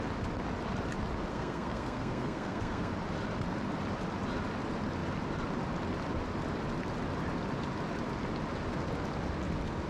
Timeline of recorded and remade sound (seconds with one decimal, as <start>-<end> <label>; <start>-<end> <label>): 0.0-1.3 recorded; 1.3-2.9 remade; 2.9-9.9 recorded